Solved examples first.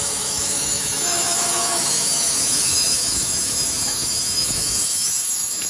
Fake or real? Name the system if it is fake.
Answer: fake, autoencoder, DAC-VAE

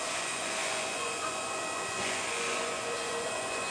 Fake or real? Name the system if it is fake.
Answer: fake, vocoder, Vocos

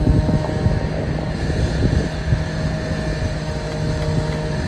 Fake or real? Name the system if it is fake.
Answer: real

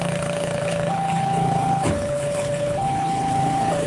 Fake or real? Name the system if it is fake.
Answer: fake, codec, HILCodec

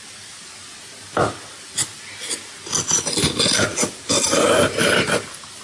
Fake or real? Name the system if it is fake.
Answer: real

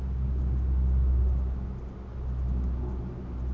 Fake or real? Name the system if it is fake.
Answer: real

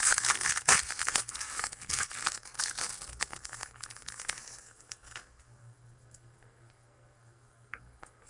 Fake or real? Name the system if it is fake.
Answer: fake, codec, SNAC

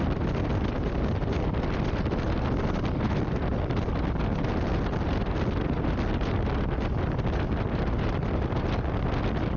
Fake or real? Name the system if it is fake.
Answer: real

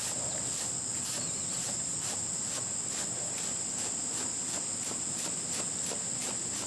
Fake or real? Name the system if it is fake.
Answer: real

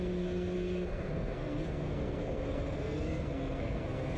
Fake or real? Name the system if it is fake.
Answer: fake, codec, SNAC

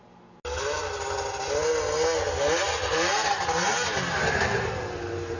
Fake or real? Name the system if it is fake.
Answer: real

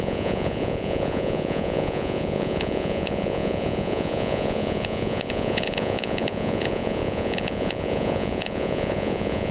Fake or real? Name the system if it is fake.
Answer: fake, vocoder, Vocos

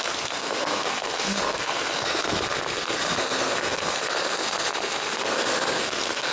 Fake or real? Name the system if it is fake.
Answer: fake, codec, SNAC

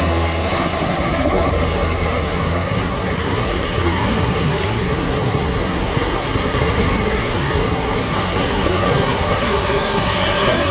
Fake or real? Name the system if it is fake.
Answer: fake, codec, SNAC